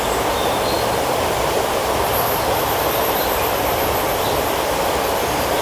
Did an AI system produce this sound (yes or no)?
yes